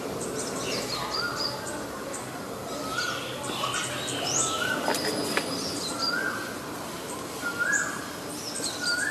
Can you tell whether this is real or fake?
real